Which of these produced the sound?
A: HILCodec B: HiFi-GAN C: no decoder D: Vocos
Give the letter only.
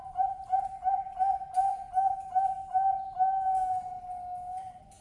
C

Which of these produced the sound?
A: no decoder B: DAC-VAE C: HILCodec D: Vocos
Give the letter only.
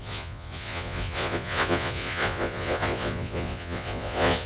D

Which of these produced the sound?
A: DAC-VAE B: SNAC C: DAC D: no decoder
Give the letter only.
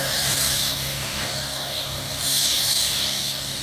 C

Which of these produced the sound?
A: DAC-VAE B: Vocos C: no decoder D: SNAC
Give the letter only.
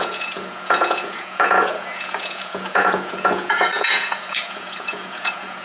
B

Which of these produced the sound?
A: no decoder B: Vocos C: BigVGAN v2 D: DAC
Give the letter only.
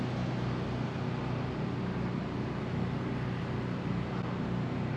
A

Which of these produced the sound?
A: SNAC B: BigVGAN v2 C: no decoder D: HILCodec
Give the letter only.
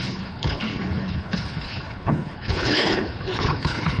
D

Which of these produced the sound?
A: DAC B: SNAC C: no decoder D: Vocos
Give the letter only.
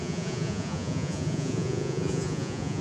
D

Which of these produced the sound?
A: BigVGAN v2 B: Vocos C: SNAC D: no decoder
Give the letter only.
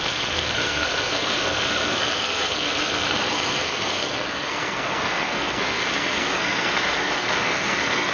C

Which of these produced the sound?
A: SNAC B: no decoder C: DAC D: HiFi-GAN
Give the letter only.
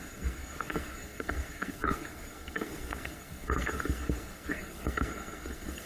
A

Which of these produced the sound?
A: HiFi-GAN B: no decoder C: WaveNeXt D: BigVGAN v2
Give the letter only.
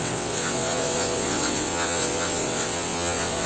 C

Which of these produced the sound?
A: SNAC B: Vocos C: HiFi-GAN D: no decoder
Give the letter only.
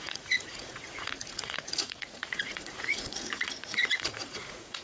B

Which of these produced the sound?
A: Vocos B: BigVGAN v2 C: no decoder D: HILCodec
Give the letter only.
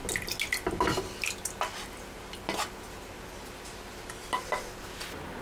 C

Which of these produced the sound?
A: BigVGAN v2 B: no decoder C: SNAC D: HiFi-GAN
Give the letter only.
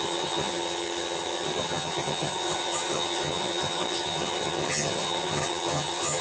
D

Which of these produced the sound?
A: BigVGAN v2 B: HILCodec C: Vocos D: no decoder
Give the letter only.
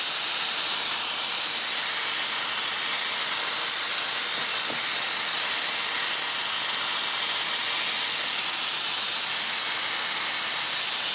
D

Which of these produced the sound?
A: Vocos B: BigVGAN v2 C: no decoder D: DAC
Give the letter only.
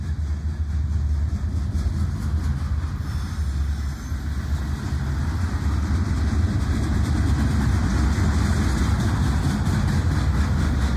C